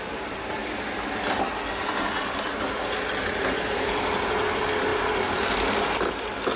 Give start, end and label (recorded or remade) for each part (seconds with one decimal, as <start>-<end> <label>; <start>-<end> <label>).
0.0-0.6 remade; 0.6-3.4 recorded; 3.4-6.5 remade